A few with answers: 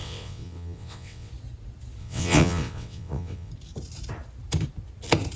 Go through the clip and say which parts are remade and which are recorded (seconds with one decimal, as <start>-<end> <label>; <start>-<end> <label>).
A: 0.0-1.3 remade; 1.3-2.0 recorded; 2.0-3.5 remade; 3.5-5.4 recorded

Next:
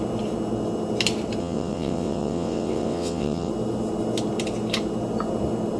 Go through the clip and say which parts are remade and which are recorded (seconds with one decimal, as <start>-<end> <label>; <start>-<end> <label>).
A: 0.0-1.4 recorded; 1.4-3.5 remade; 3.5-5.8 recorded

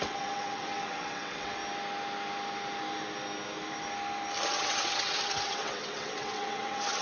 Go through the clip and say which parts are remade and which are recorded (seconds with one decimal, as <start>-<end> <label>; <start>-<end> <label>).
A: 0.0-1.6 remade; 1.6-4.5 recorded; 4.5-7.0 remade

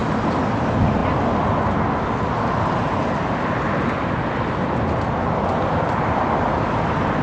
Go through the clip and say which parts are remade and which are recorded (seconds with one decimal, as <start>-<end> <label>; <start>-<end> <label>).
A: 0.0-7.2 recorded

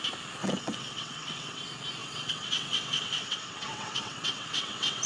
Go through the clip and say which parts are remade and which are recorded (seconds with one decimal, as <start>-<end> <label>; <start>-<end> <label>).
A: 0.0-0.4 recorded; 0.4-1.6 remade; 1.6-2.0 recorded; 2.0-5.1 remade

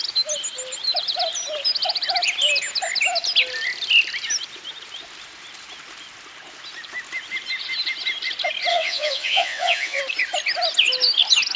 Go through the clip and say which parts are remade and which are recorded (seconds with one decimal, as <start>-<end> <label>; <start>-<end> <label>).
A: 0.0-8.7 recorded; 8.7-10.0 remade; 10.0-11.6 recorded